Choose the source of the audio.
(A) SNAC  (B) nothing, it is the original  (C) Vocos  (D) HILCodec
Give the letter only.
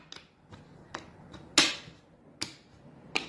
B